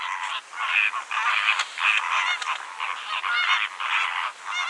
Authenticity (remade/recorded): recorded